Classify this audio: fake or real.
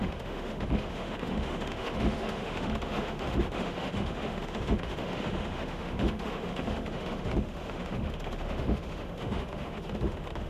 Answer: fake